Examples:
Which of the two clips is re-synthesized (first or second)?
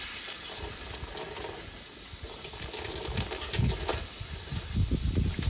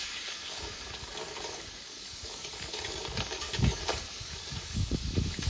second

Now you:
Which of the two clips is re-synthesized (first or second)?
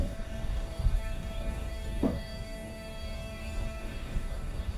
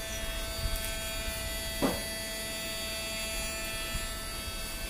first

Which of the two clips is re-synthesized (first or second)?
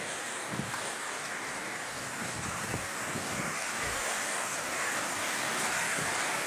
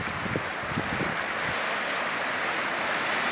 first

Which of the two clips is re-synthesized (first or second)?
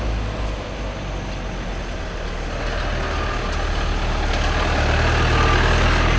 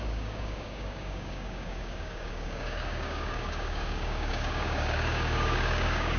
second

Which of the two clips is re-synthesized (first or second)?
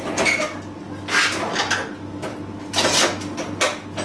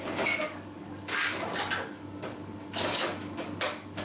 second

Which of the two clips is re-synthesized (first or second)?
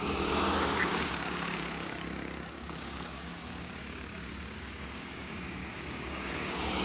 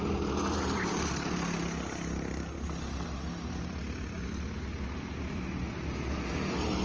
first